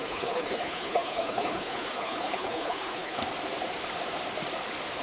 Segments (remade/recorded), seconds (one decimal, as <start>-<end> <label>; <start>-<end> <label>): 0.0-3.2 remade; 3.2-5.0 recorded